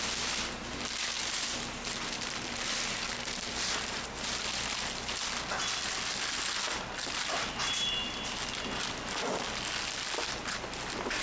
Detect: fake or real real